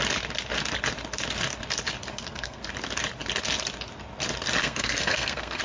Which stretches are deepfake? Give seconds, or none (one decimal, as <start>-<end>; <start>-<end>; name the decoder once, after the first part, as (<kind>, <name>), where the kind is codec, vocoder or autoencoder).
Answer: 2.1-2.6 (codec, SNAC); 4.6-5.6